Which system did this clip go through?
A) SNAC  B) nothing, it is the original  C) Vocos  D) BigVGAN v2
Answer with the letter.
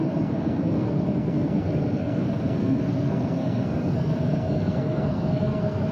A